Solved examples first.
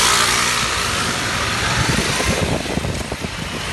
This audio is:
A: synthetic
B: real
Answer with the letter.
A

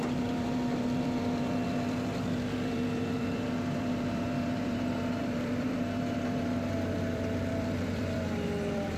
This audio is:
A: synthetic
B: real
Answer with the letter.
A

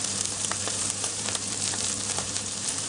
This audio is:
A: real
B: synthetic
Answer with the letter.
B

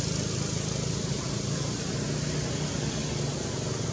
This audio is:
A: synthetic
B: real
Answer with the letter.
B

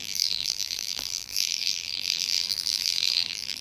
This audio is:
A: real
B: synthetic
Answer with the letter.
B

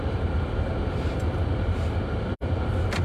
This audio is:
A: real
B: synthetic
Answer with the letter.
A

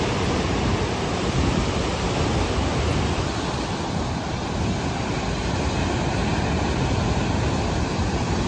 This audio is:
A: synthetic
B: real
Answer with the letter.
B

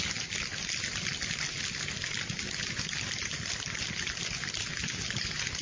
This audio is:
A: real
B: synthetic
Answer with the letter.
A